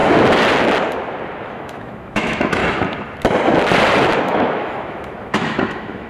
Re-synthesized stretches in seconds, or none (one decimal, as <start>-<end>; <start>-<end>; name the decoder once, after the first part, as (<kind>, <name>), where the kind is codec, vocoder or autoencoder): 1.4-2.6 (autoencoder, DAC-VAE); 4.2-6.1